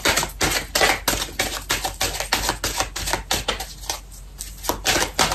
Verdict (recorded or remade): recorded